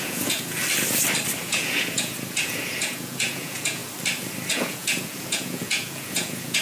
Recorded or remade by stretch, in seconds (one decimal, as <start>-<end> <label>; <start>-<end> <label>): 0.0-0.6 remade; 0.6-1.4 recorded; 1.4-3.8 remade; 3.8-4.5 recorded; 4.5-6.6 remade